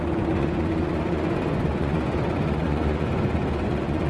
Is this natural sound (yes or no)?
no